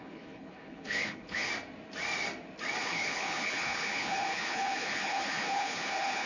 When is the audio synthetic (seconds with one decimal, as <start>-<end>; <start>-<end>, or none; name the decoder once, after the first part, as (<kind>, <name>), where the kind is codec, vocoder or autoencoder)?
0.0-1.5 (codec, HILCodec); 2.8-6.3